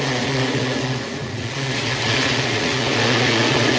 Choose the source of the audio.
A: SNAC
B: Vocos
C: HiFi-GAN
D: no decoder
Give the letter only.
B